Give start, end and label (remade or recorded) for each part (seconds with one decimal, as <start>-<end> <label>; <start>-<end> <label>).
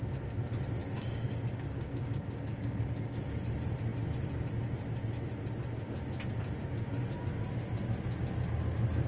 0.0-0.8 recorded; 0.8-3.4 remade; 3.4-9.1 recorded